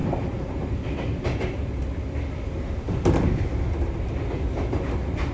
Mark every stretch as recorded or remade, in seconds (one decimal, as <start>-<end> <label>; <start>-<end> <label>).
0.0-5.3 recorded